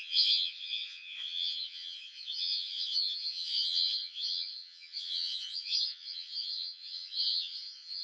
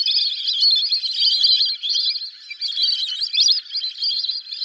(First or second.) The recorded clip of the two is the second